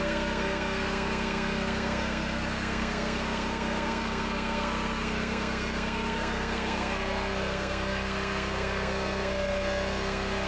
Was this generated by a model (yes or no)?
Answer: yes